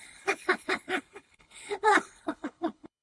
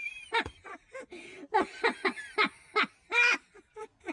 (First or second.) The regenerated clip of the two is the first